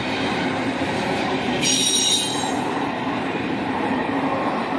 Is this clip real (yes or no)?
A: no